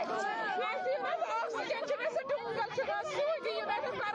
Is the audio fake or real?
real